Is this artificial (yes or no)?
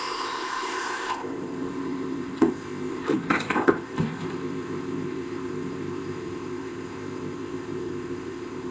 yes